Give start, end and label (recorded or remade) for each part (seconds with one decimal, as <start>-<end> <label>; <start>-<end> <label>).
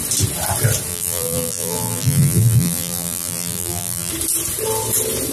0.0-0.9 recorded; 0.9-4.1 remade; 4.1-5.3 recorded